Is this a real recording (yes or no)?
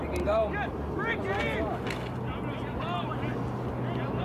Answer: yes